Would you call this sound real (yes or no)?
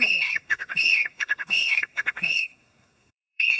no